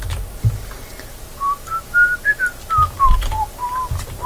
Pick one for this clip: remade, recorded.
recorded